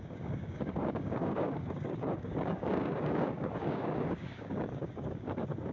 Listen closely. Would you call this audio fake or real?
fake